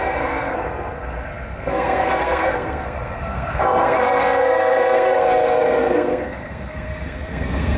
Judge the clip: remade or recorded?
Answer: remade